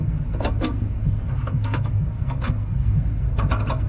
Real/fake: fake